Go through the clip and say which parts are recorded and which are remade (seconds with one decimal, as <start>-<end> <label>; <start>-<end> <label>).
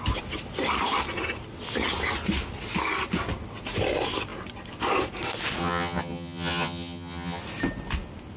0.0-5.6 recorded; 5.6-7.4 remade; 7.4-8.4 recorded